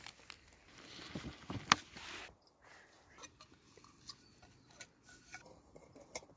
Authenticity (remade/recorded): recorded